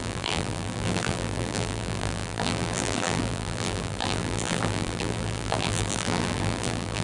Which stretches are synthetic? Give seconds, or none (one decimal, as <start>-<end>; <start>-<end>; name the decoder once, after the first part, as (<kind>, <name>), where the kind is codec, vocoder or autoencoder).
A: 0.0-7.0 (vocoder, BigVGAN v2)